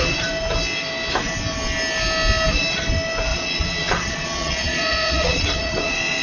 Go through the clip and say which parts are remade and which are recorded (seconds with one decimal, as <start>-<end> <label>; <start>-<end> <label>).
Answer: 0.0-3.3 recorded; 3.3-6.2 remade

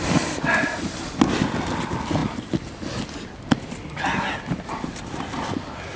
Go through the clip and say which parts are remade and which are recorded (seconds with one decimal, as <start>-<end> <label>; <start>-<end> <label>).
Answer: 0.0-6.0 recorded

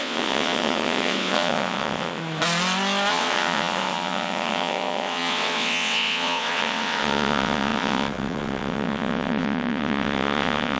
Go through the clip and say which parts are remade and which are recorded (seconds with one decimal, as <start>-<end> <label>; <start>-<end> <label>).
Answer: 0.0-2.2 remade; 2.2-3.1 recorded; 3.1-10.8 remade

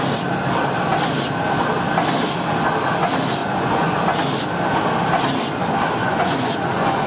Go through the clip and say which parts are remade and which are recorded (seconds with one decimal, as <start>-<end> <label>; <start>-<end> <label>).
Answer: 0.0-3.4 recorded; 3.4-4.0 remade; 4.0-6.0 recorded; 6.0-7.1 remade

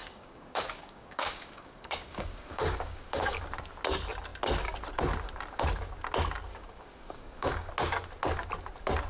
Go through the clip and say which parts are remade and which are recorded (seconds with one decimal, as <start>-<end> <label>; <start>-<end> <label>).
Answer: 0.0-3.4 remade; 3.4-6.5 recorded; 6.5-7.7 remade; 7.7-9.1 recorded

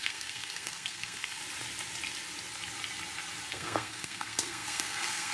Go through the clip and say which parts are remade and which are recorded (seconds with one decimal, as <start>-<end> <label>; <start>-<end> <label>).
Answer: 0.0-1.4 remade; 1.4-3.5 recorded; 3.5-5.3 remade